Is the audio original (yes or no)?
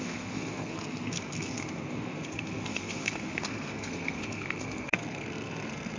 no